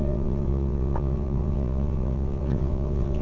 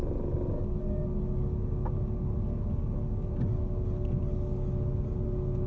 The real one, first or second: second